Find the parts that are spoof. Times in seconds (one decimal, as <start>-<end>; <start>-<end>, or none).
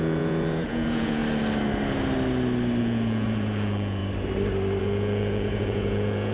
0.0-1.2; 2.8-4.0; 4.8-6.3